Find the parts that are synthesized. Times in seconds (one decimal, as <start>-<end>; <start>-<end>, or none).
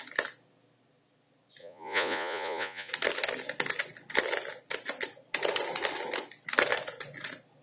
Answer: 1.6-2.9